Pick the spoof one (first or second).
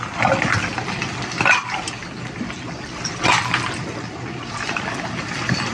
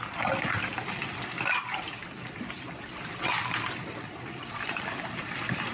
second